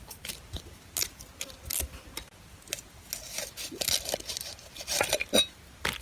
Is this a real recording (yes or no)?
yes